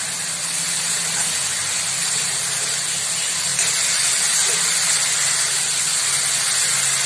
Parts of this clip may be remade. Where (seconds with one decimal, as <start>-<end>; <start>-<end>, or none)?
none

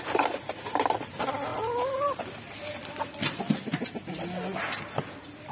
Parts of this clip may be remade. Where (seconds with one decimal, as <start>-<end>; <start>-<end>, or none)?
none

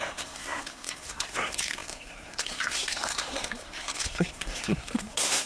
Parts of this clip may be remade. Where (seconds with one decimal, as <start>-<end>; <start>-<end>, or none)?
0.0-5.5

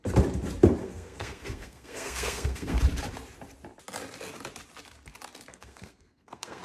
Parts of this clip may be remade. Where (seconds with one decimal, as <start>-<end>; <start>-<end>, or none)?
0.8-2.8; 5.5-6.6